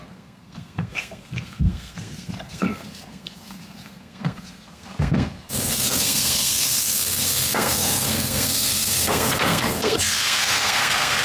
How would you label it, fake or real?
fake